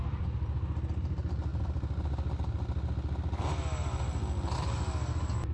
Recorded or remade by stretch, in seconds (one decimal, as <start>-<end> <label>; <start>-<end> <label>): 0.0-5.5 recorded